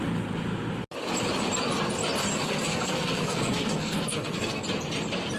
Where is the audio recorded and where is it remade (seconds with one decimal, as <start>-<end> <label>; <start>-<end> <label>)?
0.0-2.3 recorded; 2.3-4.6 remade; 4.6-5.4 recorded